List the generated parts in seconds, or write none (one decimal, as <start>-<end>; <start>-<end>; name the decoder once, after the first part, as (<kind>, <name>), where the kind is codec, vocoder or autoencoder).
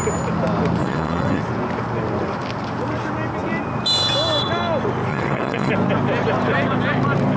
0.8-1.4 (vocoder, WaveNeXt); 5.1-5.7